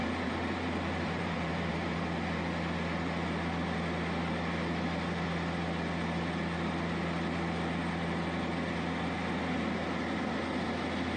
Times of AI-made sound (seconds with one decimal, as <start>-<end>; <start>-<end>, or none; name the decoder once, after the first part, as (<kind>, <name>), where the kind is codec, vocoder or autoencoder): 0.0-2.0 (vocoder, BigVGAN v2)